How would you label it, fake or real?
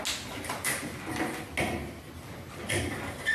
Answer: real